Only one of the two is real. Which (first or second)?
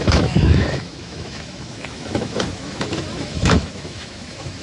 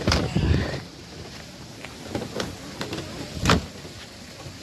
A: second